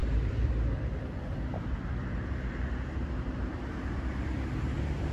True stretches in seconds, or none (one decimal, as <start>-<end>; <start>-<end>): 3.1-5.1